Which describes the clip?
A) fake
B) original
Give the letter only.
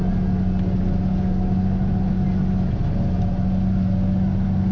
B